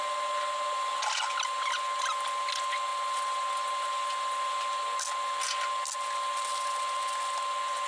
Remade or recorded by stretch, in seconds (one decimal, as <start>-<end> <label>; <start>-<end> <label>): 0.0-7.9 recorded